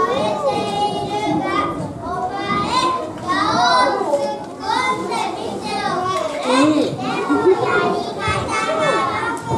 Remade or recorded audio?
recorded